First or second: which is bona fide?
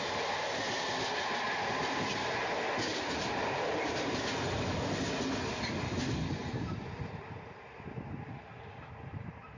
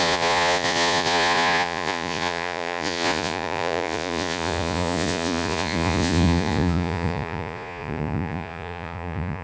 first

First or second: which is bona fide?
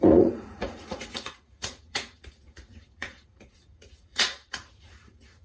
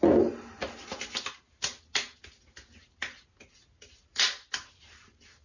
second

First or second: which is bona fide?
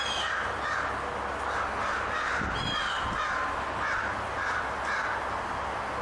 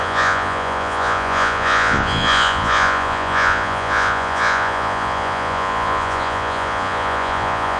first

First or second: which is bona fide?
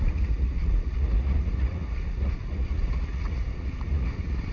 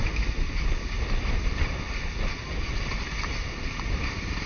second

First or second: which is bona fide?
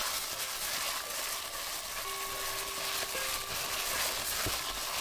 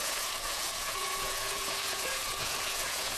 first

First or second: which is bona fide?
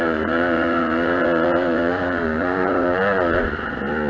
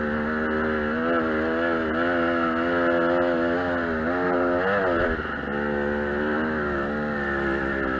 second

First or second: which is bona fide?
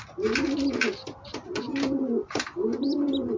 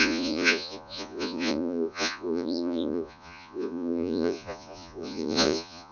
first